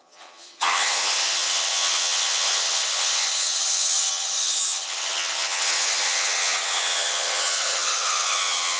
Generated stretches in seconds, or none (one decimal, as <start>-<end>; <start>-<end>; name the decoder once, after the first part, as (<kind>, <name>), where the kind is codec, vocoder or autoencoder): 0.0-8.8 (vocoder, HiFi-GAN)